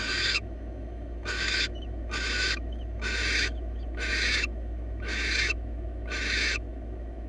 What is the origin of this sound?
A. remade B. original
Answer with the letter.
A